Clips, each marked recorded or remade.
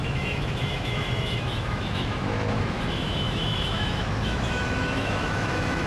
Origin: remade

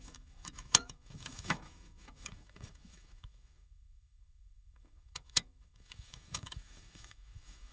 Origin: remade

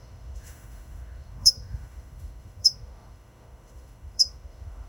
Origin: remade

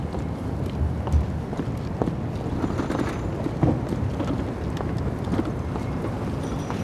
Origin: recorded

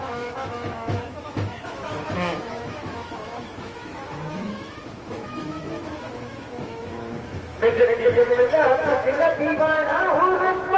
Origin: remade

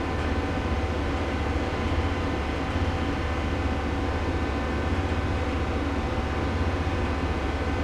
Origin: recorded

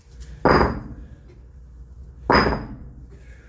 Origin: recorded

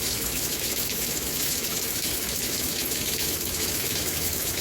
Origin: remade